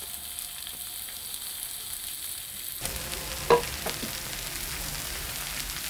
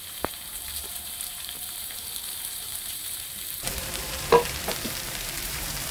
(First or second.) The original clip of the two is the first